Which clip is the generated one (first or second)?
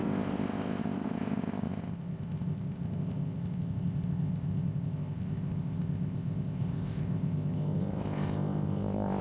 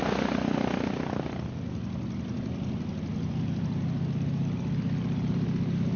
first